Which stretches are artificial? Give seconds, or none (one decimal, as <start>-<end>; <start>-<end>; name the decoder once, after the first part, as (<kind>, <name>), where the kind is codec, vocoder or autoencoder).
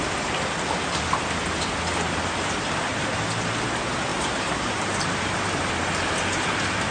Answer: 4.1-5.7 (vocoder, BigVGAN v2)